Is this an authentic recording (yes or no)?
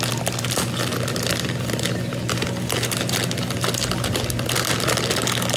yes